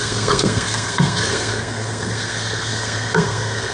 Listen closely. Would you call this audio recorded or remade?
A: remade